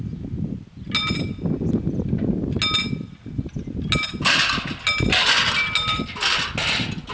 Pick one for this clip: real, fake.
real